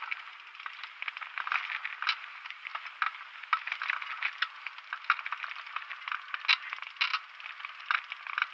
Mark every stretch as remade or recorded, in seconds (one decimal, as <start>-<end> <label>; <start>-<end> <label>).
0.0-8.5 recorded